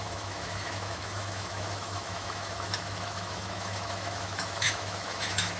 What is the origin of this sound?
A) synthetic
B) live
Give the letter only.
A